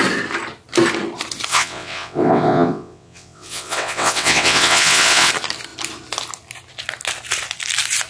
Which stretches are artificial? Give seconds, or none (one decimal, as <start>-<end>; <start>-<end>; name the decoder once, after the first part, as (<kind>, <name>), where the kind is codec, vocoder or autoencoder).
1.5-5.3 (vocoder, WaveNeXt)